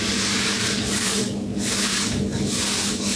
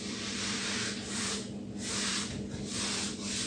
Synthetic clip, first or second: first